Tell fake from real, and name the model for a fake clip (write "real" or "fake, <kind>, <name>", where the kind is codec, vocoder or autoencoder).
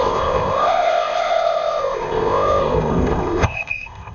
fake, codec, ZipCodec